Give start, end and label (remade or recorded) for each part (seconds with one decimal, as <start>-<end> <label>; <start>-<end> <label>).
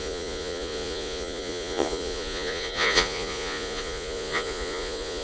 0.0-5.2 remade